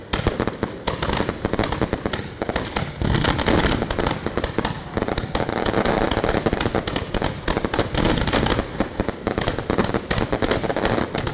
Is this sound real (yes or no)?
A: no